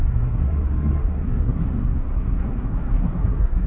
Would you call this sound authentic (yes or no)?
no